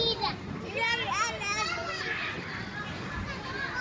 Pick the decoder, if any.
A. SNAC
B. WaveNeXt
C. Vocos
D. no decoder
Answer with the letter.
D